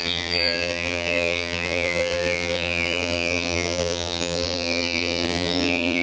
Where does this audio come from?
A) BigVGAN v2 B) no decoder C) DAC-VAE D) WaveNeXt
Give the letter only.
A